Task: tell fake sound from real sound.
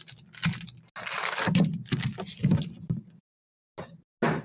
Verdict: real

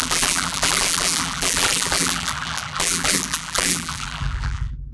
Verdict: fake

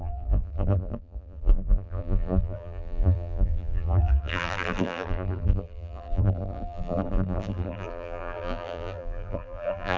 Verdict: fake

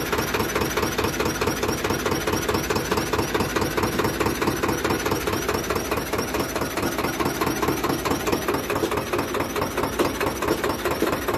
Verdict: real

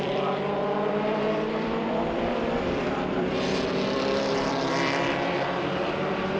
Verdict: fake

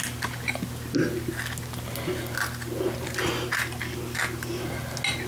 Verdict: real